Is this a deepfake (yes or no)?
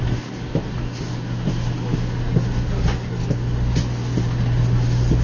no